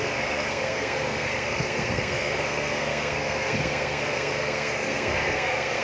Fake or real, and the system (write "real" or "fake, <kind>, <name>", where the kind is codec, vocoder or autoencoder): fake, codec, SNAC